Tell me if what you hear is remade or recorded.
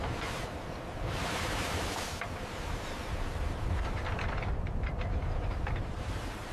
remade